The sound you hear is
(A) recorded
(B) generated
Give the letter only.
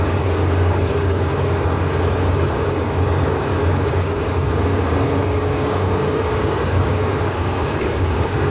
B